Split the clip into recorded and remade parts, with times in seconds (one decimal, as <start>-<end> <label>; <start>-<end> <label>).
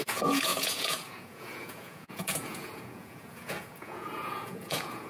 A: 0.0-5.1 remade